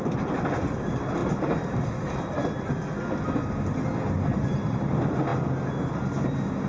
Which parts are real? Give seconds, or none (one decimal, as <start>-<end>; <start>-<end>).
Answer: 0.0-6.7